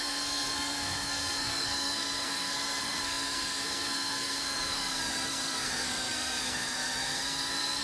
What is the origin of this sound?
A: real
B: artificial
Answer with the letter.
B